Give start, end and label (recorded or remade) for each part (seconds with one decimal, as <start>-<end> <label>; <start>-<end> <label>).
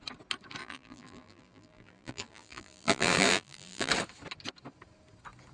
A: 0.0-0.6 recorded; 0.6-3.9 remade; 3.9-5.5 recorded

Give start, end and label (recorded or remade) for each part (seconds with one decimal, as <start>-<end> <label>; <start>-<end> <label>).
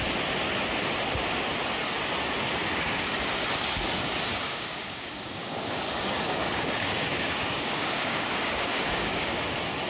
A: 0.0-4.3 recorded; 4.3-9.4 remade; 9.4-9.9 recorded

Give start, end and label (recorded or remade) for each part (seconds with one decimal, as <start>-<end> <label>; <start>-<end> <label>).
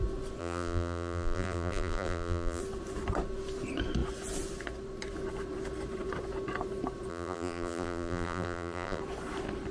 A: 0.0-0.4 recorded; 0.4-2.6 remade; 2.6-7.1 recorded; 7.1-9.0 remade; 9.0-9.7 recorded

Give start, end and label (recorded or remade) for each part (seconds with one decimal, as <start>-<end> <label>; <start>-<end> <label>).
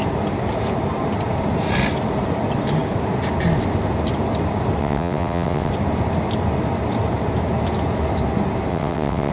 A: 0.0-4.8 recorded; 4.8-5.7 remade; 5.7-8.7 recorded; 8.7-9.3 remade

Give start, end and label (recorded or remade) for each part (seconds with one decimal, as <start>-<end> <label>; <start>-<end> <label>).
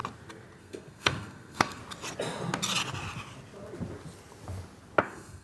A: 0.0-0.6 recorded; 0.6-1.8 remade; 1.8-5.0 recorded; 5.0-5.4 remade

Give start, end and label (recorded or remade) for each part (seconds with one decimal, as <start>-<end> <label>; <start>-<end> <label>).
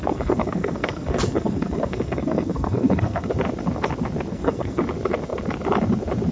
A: 0.0-3.3 remade; 3.3-4.3 recorded; 4.3-4.8 remade; 4.8-6.3 recorded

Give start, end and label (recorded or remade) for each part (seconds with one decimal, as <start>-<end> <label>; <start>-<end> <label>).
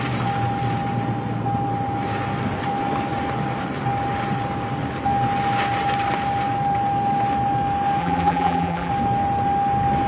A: 0.0-8.0 recorded; 8.0-8.9 remade; 8.9-10.1 recorded